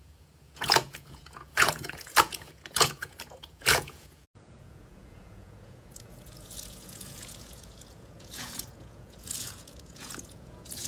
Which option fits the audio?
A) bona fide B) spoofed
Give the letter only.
B